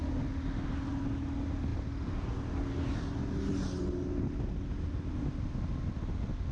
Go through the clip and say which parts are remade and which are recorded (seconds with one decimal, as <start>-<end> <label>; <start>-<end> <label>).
0.0-6.5 recorded